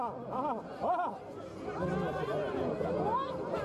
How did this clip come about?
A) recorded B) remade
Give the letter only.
A